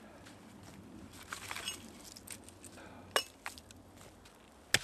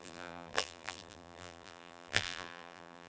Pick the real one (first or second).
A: first